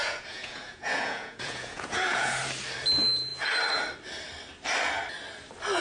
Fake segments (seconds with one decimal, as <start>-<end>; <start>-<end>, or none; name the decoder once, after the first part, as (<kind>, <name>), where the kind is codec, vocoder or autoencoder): 0.0-2.4 (vocoder, Vocos)